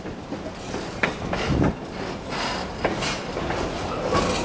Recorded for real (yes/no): yes